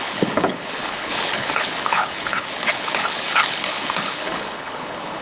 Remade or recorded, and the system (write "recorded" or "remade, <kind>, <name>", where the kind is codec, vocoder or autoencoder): remade, codec, HILCodec